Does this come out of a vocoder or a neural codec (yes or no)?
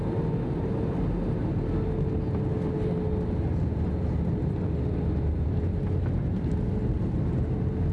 no